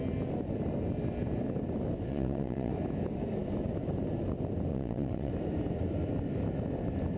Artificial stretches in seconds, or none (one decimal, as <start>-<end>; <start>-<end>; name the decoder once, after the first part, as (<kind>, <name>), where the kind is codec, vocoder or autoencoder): 2.1-2.7 (vocoder, Vocos); 4.7-5.3